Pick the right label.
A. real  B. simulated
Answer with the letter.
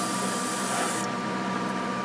A